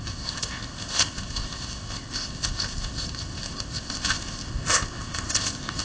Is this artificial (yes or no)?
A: yes